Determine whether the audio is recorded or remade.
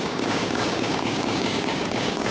remade